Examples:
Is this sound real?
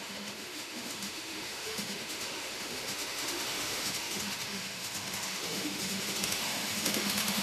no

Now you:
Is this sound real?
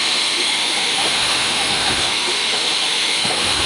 no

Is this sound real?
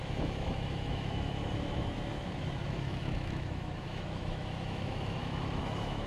no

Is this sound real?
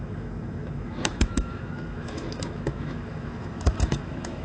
no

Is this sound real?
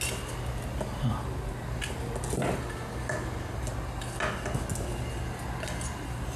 yes